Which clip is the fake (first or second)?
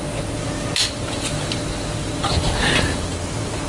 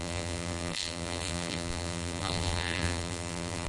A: second